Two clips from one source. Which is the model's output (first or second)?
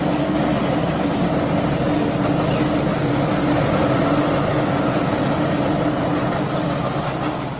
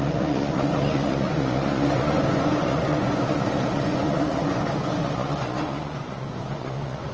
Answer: second